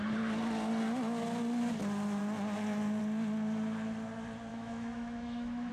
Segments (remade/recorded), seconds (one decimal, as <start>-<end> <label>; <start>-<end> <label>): 0.0-4.5 recorded; 4.5-5.7 remade